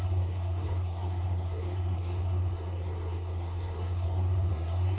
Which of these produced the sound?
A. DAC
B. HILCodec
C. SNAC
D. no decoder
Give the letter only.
C